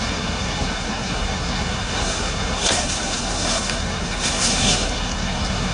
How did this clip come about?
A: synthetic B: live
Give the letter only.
A